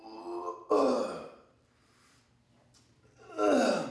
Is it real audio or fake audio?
real